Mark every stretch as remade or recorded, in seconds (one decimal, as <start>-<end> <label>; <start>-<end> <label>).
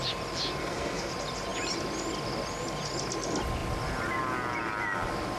0.0-0.6 recorded; 0.6-1.1 remade; 1.1-5.4 recorded